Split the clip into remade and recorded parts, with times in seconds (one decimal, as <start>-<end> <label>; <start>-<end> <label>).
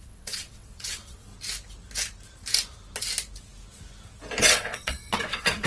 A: 0.0-1.3 remade; 1.3-4.4 recorded; 4.4-5.7 remade